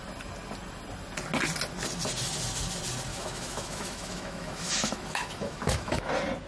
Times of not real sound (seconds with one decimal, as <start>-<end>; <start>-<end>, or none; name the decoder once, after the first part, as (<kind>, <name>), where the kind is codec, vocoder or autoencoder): 3.1-6.1 (autoencoder, DAC-VAE)